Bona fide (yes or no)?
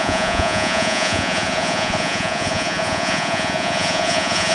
no